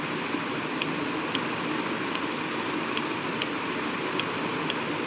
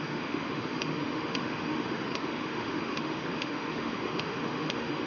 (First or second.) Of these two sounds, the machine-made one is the second